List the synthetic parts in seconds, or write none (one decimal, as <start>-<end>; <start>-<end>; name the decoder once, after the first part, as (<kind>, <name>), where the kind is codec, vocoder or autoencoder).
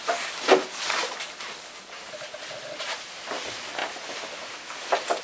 none